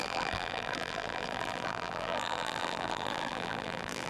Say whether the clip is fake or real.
fake